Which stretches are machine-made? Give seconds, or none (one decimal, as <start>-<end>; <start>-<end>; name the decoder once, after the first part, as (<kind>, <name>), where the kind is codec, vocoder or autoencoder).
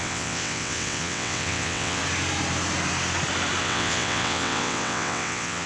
0.0-2.0 (vocoder, WaveNeXt); 3.6-5.7